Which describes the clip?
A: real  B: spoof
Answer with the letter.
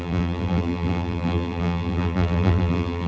B